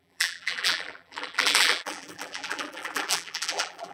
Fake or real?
fake